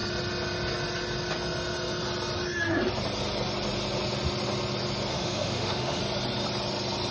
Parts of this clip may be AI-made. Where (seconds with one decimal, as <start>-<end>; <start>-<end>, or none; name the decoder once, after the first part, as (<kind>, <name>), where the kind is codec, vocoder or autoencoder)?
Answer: 5.1-6.0 (autoencoder, DAC-VAE)